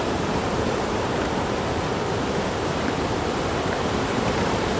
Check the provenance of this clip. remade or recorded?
remade